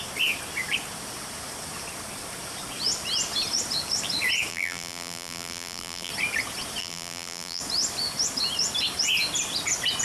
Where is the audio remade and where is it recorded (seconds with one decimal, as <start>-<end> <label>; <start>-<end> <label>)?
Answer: 0.0-4.5 recorded; 4.5-6.1 remade; 6.1-6.8 recorded; 6.8-7.6 remade; 7.6-10.0 recorded